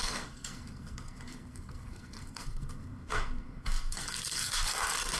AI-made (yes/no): yes